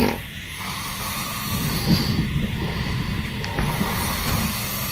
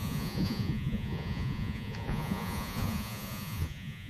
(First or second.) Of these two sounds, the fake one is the second